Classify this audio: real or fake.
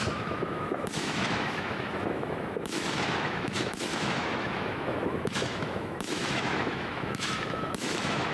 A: fake